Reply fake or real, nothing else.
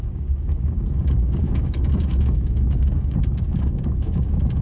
fake